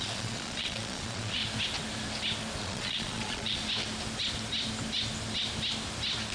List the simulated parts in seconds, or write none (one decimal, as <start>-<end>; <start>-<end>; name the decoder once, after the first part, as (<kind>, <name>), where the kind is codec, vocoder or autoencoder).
0.0-1.4 (vocoder, Vocos); 2.6-3.6